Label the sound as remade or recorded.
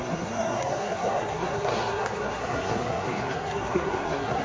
remade